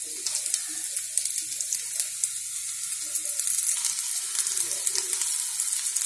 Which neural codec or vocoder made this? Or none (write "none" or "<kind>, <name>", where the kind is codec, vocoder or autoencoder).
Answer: none